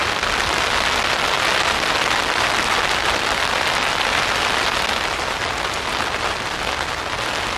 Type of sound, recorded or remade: recorded